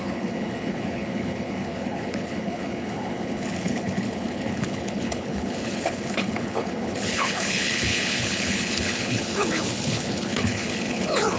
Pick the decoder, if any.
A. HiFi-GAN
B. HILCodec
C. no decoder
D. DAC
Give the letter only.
B